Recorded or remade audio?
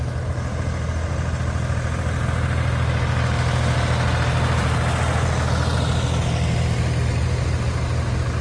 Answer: recorded